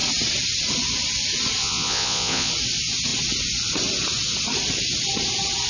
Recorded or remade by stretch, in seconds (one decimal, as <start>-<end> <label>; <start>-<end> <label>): 0.0-1.6 recorded; 1.6-2.5 remade; 2.5-5.7 recorded